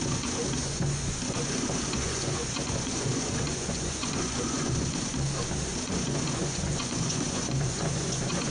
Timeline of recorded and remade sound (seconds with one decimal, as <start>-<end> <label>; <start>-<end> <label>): 0.0-5.1 remade; 5.1-5.6 recorded; 5.6-8.5 remade